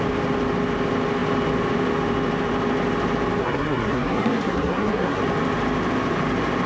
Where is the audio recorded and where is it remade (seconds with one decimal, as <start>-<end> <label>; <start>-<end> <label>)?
0.0-3.4 recorded; 3.4-5.2 remade; 5.2-6.7 recorded